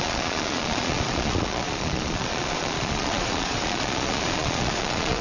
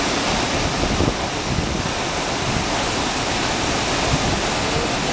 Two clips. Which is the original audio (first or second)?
second